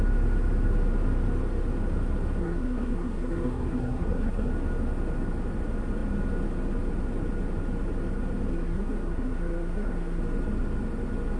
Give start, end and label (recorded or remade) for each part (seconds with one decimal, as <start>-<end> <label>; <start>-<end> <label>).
0.0-2.4 recorded; 2.4-4.5 remade; 4.5-8.5 recorded; 8.5-10.2 remade; 10.2-11.4 recorded